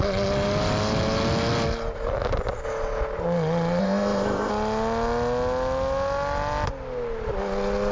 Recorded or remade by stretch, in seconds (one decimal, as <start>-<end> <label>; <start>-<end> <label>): 0.0-3.8 recorded; 3.8-4.5 remade; 4.5-7.9 recorded